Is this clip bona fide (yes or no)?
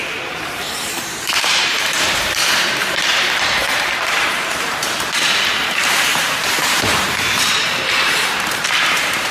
no